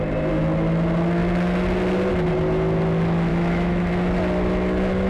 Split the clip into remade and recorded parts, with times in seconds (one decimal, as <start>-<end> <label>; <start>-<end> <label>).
0.0-3.3 recorded; 3.3-3.9 remade; 3.9-5.1 recorded